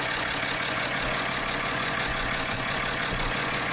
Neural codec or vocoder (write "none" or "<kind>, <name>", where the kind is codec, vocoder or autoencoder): vocoder, Vocos